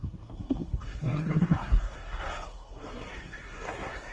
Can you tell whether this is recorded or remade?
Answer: remade